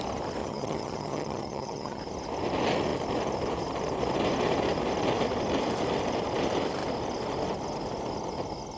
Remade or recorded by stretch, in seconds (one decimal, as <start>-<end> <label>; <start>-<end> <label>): 0.0-0.4 recorded; 0.4-2.0 remade; 2.0-8.8 recorded